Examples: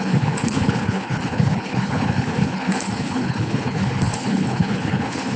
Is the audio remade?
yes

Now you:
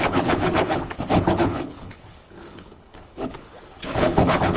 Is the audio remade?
yes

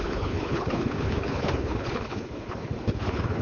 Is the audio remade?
yes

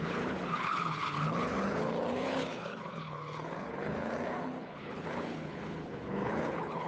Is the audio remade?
yes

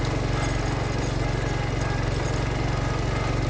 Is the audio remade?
no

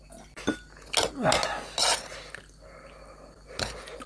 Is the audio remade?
no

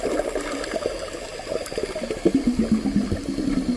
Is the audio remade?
no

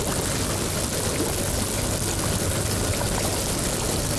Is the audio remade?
no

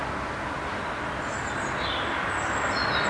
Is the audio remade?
no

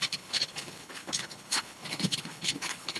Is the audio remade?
yes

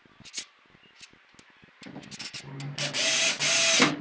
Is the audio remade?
no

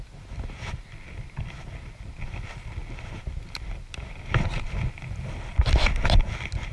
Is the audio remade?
no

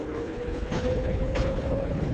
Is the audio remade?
yes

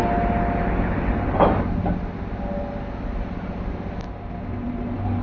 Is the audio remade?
no